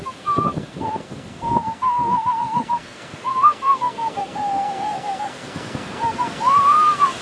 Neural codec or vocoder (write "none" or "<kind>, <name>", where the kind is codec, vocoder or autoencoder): codec, SNAC